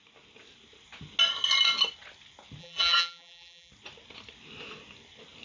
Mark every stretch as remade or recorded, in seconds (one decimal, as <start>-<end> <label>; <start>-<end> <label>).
0.0-2.6 recorded; 2.6-3.7 remade; 3.7-5.4 recorded